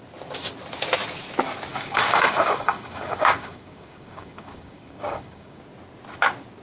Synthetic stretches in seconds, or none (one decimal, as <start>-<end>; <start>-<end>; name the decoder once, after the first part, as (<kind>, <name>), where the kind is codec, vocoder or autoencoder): 1.7-5.6 (codec, DAC)